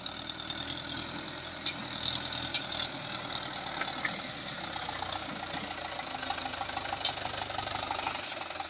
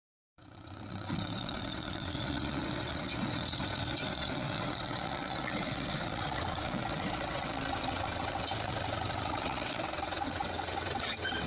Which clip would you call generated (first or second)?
second